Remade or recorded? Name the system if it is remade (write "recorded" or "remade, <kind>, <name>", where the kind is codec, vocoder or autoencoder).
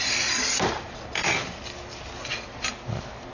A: recorded